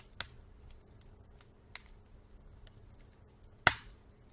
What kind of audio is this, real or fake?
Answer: real